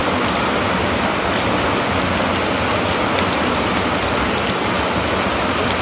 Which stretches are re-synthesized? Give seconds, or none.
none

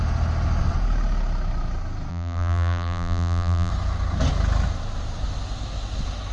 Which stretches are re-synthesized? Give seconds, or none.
2.1-3.7

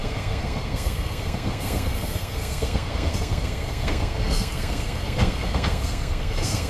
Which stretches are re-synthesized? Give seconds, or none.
0.0-6.7

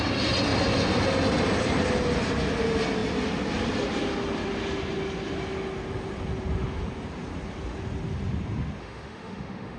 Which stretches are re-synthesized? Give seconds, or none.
8.8-9.8